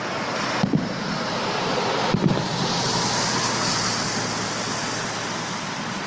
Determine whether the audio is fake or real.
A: real